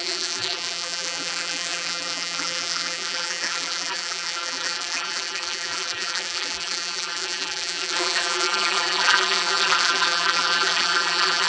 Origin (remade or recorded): remade